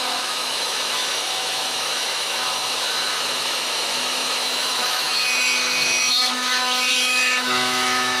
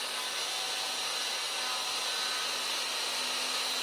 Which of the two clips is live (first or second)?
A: second